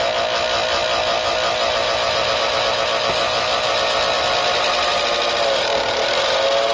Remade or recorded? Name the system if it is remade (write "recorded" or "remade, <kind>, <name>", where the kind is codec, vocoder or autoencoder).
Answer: recorded